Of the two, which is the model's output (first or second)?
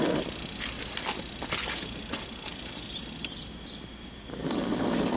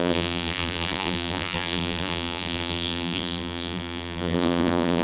second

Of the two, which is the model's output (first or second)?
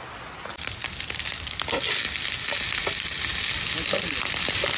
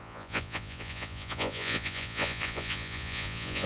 second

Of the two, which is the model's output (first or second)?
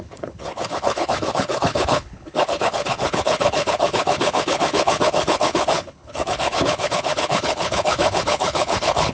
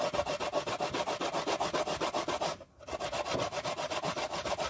first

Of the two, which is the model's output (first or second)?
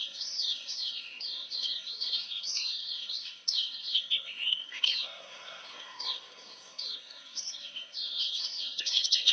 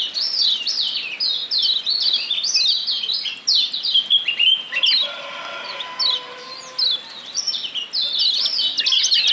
first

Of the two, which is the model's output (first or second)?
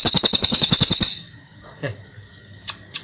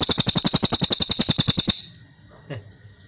first